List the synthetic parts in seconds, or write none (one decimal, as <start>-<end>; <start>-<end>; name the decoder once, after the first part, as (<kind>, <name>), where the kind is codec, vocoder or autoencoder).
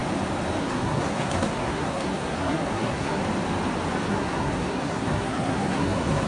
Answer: 0.6-3.2 (codec, SNAC); 4.1-6.3